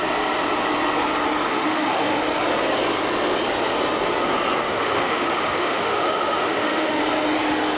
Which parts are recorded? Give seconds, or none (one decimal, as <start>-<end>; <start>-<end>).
0.0-1.5; 2.2-4.7; 7.0-7.8